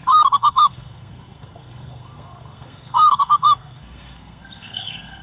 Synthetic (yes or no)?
yes